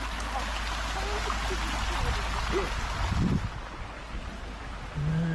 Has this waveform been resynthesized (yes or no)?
no